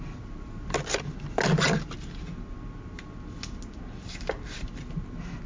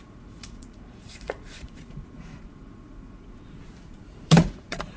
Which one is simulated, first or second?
second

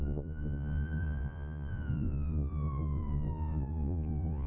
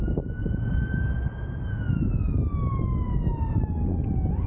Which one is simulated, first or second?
first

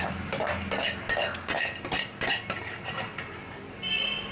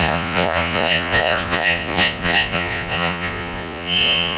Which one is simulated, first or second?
second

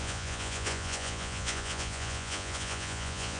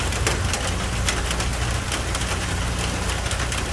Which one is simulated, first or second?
first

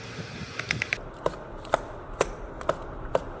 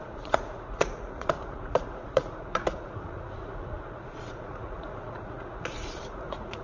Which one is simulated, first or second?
second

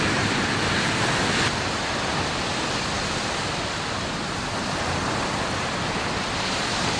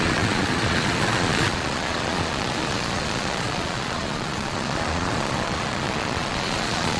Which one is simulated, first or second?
second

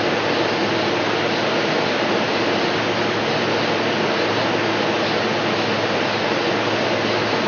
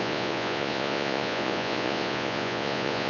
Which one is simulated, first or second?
second